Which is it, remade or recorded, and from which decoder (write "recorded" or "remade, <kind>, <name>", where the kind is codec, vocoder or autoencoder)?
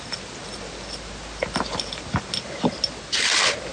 recorded